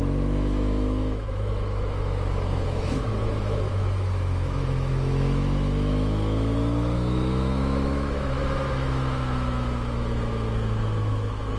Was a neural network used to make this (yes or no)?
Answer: yes